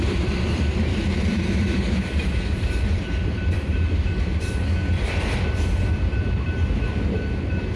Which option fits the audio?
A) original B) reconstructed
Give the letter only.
B